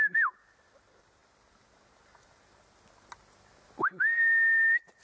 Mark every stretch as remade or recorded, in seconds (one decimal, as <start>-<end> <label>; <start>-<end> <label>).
0.0-5.0 recorded